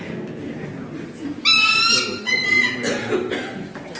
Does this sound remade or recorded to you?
recorded